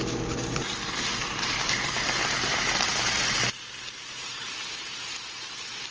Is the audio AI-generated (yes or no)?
yes